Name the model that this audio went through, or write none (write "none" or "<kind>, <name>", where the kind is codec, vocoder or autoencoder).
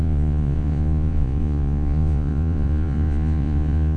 vocoder, Vocos